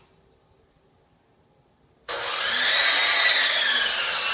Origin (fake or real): real